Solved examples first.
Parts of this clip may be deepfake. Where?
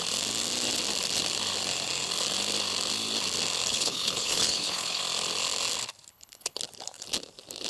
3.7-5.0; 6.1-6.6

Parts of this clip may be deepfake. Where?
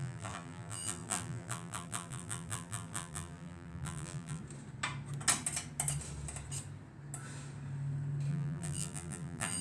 0.0-4.4; 8.3-9.6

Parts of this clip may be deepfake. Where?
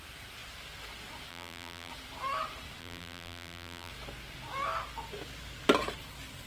1.3-1.9; 2.8-3.9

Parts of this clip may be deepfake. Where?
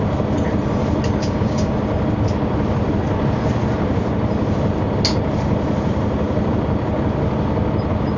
1.2-1.7